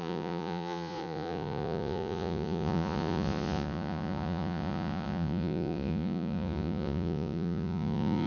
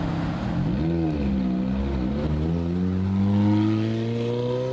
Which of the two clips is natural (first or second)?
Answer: second